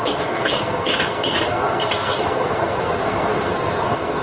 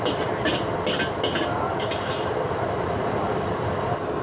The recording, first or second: second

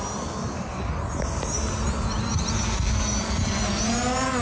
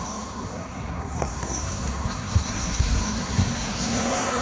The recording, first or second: first